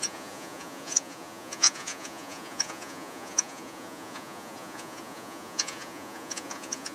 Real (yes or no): no